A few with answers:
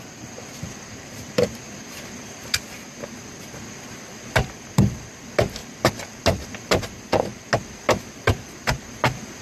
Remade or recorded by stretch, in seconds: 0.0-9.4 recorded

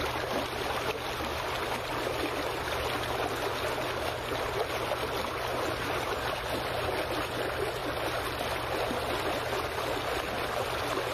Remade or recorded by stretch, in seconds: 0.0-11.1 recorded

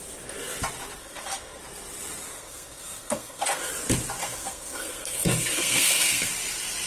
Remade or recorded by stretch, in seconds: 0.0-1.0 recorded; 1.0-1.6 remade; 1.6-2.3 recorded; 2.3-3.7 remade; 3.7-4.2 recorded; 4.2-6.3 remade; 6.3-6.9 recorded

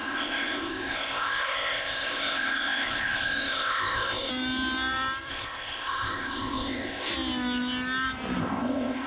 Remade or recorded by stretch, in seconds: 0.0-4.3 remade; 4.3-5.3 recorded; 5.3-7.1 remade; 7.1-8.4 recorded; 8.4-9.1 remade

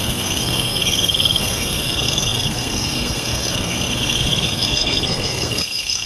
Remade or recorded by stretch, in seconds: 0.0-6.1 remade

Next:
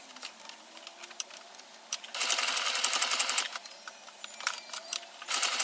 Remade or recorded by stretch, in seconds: 0.0-3.6 recorded; 3.6-5.6 remade